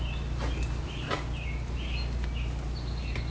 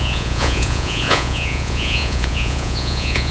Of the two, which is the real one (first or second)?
first